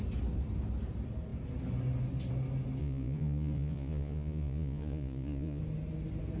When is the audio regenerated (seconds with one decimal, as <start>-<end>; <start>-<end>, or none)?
2.8-5.6

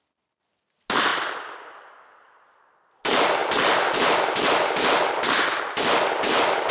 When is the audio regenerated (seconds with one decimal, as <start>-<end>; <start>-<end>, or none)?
none

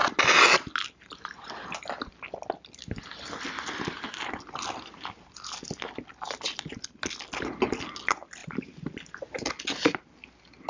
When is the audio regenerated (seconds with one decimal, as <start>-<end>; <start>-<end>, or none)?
8.4-9.0

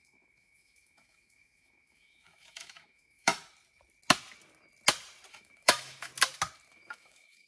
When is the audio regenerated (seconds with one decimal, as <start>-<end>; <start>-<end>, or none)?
0.0-3.3; 5.3-6.1; 6.7-7.5